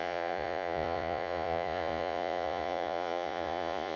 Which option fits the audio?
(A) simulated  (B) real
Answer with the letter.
A